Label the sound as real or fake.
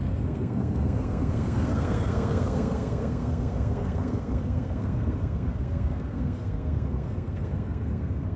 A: fake